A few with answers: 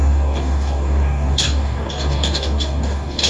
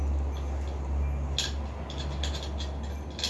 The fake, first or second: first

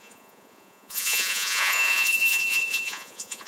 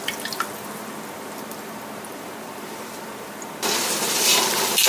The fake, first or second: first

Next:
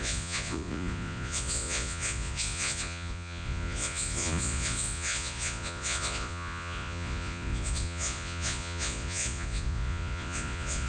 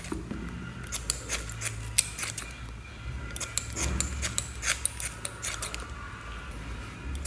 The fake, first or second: first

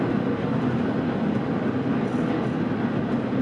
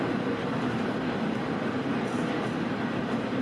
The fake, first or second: second